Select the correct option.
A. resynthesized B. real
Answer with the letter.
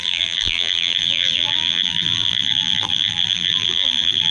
A